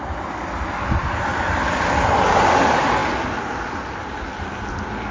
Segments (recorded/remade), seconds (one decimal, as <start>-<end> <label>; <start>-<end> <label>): 0.0-5.1 recorded

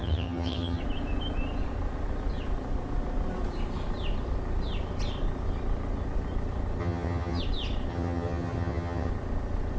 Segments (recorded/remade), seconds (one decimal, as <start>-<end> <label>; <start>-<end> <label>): 0.0-0.8 remade; 0.8-6.8 recorded; 6.8-7.4 remade; 7.4-7.9 recorded; 7.9-9.1 remade; 9.1-9.8 recorded

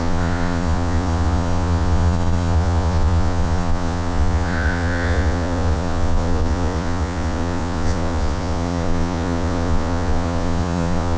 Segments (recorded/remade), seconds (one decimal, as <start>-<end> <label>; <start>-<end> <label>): 0.0-11.2 remade

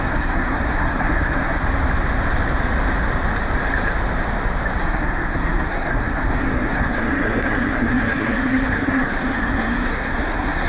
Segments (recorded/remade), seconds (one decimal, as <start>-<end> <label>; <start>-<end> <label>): 0.0-1.6 remade; 1.6-4.8 recorded; 4.8-10.7 remade

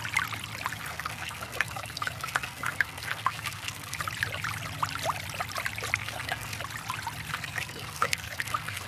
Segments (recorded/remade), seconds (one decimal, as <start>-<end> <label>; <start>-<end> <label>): 0.0-0.7 recorded; 0.7-4.0 remade; 4.0-6.0 recorded; 6.0-6.6 remade; 6.6-7.3 recorded; 7.3-8.9 remade

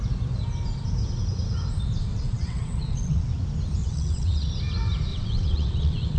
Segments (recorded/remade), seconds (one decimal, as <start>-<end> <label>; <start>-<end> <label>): 0.0-2.1 recorded; 2.1-3.3 remade; 3.3-3.8 recorded; 3.8-4.5 remade; 4.5-5.1 recorded; 5.1-6.2 remade

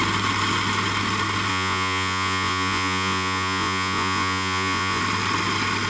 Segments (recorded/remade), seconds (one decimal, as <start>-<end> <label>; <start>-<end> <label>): 0.0-1.5 recorded; 1.5-5.0 remade; 5.0-5.9 recorded